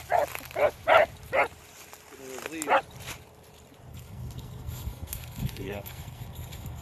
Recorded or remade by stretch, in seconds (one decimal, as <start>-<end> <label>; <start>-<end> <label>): 0.0-3.9 recorded; 3.9-6.8 remade